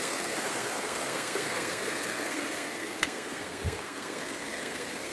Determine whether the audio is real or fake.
fake